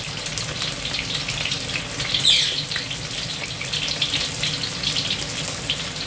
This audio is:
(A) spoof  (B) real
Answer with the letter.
B